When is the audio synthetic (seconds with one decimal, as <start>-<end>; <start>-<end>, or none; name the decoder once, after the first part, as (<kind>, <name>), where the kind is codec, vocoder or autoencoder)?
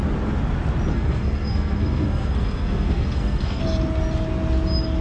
0.9-3.6 (codec, SNAC)